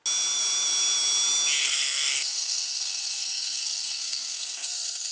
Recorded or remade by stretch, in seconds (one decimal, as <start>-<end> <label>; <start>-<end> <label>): 0.0-1.6 recorded; 1.6-5.1 remade